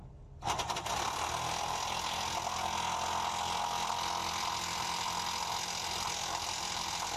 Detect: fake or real real